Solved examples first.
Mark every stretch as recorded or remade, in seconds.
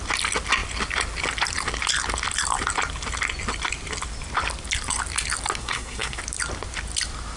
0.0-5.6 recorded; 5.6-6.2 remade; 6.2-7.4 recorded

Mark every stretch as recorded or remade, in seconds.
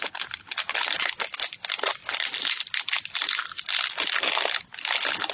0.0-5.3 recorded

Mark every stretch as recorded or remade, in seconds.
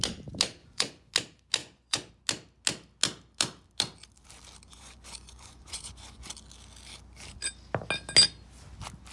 0.0-0.6 recorded; 0.6-1.1 remade; 1.1-1.6 recorded; 1.6-2.1 remade; 2.1-4.7 recorded; 4.7-6.3 remade; 6.3-9.1 recorded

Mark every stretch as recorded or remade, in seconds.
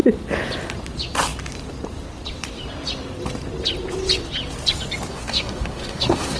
0.0-5.1 recorded; 5.1-6.4 remade